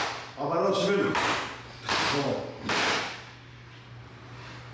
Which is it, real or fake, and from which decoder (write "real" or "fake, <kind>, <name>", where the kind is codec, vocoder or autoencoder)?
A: real